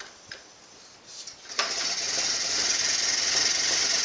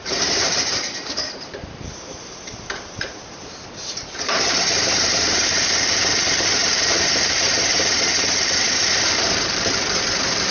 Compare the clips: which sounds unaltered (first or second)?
first